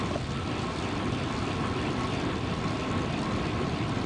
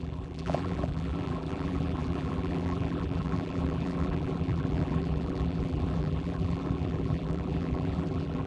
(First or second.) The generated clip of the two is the second